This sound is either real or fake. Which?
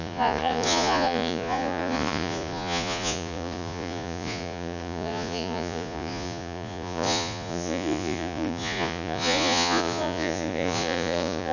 fake